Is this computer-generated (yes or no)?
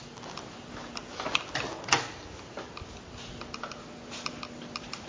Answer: no